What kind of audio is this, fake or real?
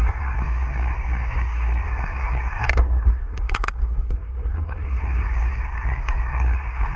fake